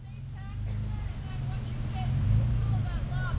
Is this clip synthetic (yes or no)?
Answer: no